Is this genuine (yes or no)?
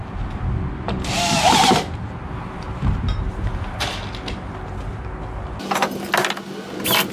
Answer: yes